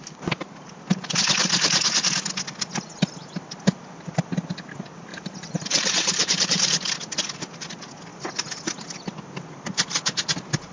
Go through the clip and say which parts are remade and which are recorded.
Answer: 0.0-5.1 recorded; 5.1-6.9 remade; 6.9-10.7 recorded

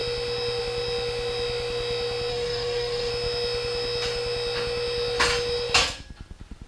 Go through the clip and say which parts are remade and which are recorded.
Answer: 0.0-2.3 recorded; 2.3-3.1 remade; 3.1-6.7 recorded

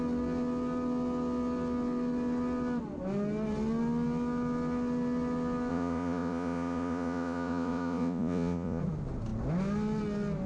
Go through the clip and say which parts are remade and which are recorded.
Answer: 0.0-5.7 recorded; 5.7-8.8 remade; 8.8-10.5 recorded

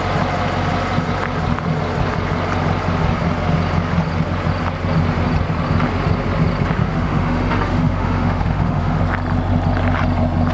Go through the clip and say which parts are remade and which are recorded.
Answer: 0.0-6.8 recorded; 6.8-9.0 remade; 9.0-10.5 recorded

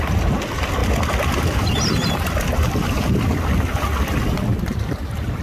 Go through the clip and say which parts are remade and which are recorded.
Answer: 0.0-4.5 recorded; 4.5-5.4 remade